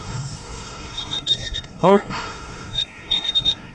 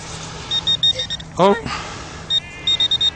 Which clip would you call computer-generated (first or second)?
first